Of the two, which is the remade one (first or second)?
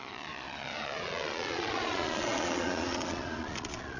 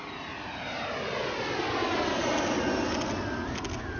first